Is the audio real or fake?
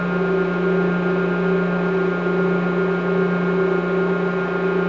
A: real